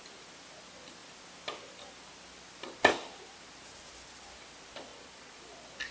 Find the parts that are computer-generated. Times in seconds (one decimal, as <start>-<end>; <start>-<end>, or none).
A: 4.9-5.4